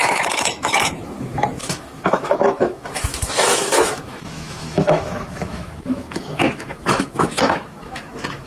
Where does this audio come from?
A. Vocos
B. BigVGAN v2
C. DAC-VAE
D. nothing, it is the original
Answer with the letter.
C